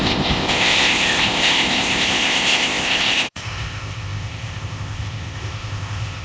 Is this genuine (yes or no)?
no